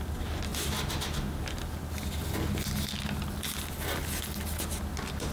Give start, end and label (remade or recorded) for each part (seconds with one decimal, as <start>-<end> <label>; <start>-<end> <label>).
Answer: 0.0-5.3 recorded